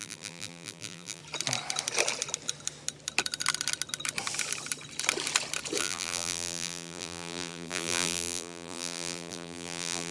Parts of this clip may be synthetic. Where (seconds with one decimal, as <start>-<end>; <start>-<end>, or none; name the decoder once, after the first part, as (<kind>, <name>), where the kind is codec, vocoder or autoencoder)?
0.0-1.2 (vocoder, BigVGAN v2); 5.8-10.1